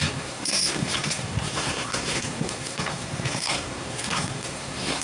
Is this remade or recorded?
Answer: remade